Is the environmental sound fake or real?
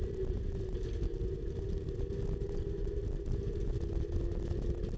real